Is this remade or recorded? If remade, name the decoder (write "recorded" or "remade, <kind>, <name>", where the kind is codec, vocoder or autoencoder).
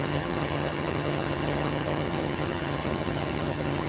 remade, vocoder, HiFi-GAN